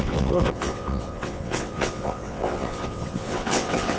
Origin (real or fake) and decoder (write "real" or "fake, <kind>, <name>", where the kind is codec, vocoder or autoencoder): fake, vocoder, WaveNeXt